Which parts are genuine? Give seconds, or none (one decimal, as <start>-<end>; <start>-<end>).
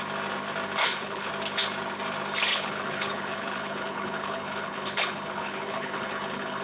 0.0-0.8; 1.3-2.5